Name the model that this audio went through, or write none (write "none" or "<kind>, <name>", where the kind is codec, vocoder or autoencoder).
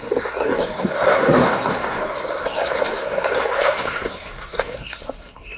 codec, SNAC